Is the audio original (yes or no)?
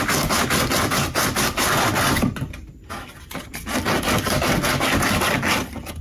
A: yes